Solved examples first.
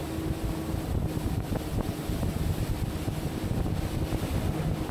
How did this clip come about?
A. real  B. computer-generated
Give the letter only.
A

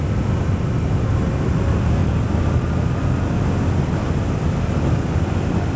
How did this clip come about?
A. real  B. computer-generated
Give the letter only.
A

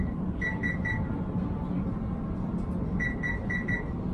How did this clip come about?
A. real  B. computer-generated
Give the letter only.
A